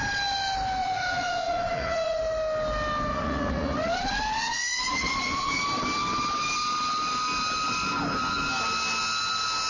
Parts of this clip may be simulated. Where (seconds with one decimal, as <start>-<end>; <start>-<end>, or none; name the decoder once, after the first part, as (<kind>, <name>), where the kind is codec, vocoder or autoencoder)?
0.8-2.2 (vocoder, Vocos); 3.1-5.6